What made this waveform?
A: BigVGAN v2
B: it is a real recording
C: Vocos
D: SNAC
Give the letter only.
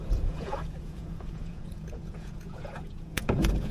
C